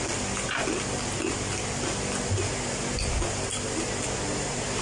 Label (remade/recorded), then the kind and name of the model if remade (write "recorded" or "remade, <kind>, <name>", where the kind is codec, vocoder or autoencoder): recorded